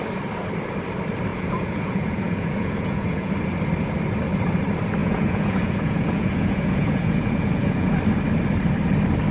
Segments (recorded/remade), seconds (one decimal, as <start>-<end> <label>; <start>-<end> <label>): 0.0-1.3 recorded; 1.3-3.3 remade; 3.3-5.0 recorded; 5.0-8.0 remade; 8.0-9.3 recorded